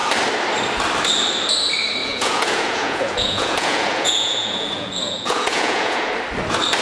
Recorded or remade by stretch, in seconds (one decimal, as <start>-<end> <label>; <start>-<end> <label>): 0.0-2.0 recorded; 2.0-6.1 remade; 6.1-6.8 recorded